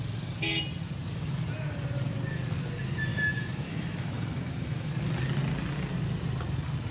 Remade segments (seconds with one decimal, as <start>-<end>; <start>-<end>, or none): 3.1-4.9